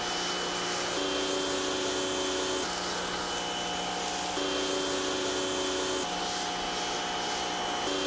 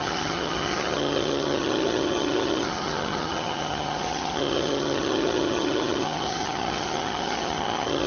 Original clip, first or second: first